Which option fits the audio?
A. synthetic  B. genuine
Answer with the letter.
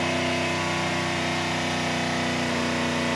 B